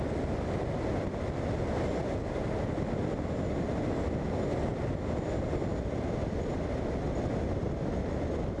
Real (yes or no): yes